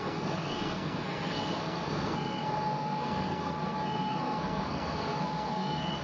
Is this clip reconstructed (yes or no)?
yes